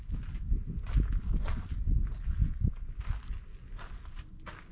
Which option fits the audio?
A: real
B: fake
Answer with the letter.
A